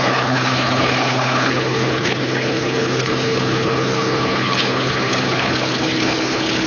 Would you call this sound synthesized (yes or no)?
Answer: yes